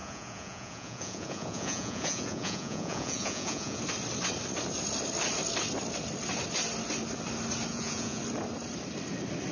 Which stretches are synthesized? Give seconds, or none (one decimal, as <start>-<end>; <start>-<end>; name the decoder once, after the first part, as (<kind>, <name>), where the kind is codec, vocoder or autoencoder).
0.0-3.8 (vocoder, Vocos); 7.7-8.2